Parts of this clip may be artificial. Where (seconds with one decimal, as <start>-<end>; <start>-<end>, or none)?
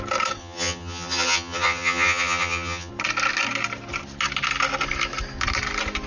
0.4-2.9